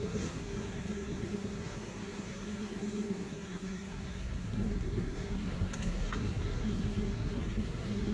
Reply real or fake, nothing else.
fake